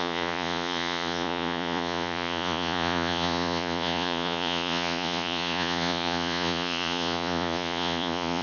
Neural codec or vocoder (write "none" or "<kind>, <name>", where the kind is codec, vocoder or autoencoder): vocoder, Vocos